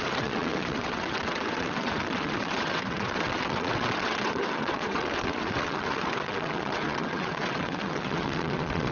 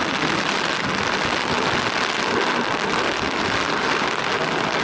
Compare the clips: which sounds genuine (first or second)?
second